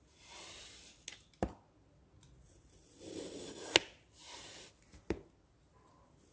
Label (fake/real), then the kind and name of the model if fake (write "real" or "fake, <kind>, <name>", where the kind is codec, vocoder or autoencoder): real